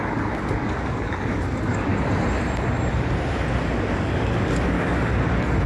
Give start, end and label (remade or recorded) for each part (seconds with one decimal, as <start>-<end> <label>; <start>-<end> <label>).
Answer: 0.0-1.9 remade; 1.9-3.6 recorded; 3.6-5.7 remade